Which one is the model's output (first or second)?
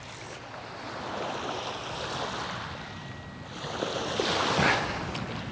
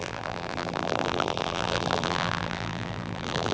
second